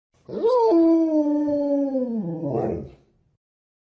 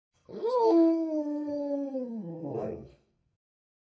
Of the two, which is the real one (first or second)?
first